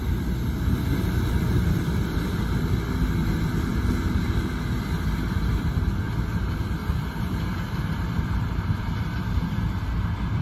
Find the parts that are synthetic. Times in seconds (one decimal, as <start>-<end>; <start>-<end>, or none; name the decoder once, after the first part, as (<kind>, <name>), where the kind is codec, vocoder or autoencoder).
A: 0.9-2.9 (vocoder, BigVGAN v2); 3.7-4.4; 6.8-8.8

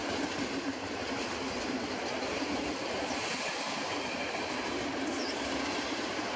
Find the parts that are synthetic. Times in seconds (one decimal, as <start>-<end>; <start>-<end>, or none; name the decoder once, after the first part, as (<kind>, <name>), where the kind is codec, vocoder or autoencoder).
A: none

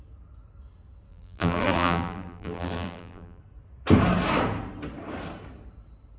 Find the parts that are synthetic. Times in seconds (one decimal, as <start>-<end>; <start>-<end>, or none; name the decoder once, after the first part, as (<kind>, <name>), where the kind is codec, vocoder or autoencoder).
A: 1.1-3.4 (vocoder, BigVGAN v2)

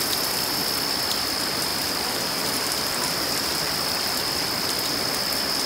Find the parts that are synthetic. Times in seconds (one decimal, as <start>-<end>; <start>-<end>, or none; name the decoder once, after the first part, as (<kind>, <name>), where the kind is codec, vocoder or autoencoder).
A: 1.7-4.6 (vocoder, BigVGAN v2)

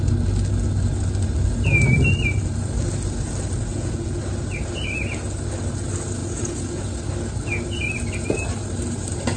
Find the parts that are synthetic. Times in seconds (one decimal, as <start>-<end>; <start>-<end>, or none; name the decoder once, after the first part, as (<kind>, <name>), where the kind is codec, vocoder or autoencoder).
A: 3.7-4.2 (vocoder, Vocos); 6.2-6.8